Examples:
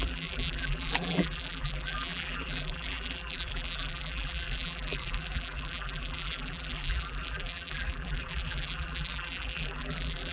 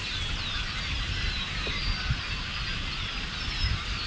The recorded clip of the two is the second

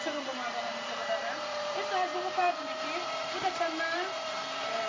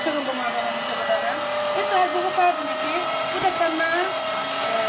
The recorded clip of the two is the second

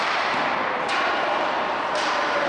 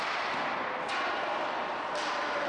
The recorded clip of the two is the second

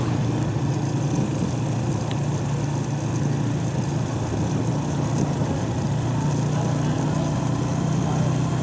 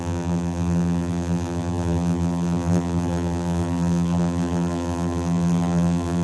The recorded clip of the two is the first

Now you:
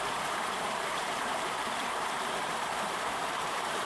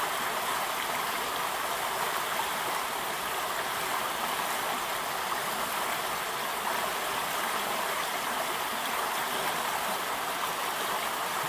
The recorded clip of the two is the second